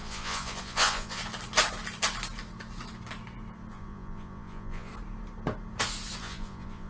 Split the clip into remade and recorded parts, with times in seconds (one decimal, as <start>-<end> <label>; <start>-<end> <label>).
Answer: 0.0-1.2 remade; 1.2-3.7 recorded; 3.7-4.9 remade; 4.9-6.2 recorded; 6.2-6.9 remade